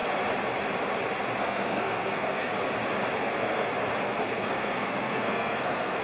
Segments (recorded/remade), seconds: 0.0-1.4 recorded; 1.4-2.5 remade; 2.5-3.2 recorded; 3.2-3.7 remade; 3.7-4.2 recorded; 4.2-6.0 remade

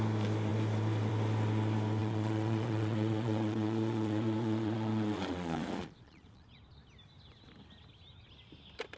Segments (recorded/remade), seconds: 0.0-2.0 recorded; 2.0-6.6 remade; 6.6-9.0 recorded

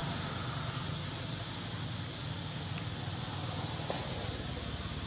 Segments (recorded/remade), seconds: 0.0-5.1 recorded

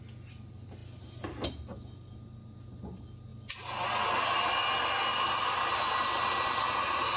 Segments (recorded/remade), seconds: 0.0-5.1 recorded; 5.1-5.6 remade; 5.6-7.2 recorded

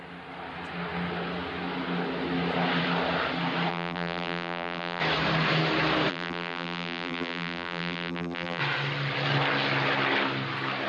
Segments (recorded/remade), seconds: 0.0-3.7 recorded; 3.7-5.0 remade; 5.0-6.1 recorded; 6.1-8.6 remade; 8.6-10.9 recorded